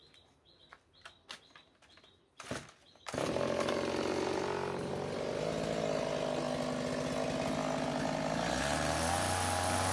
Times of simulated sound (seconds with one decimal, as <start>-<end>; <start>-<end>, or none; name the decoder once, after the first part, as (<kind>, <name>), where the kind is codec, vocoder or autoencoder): none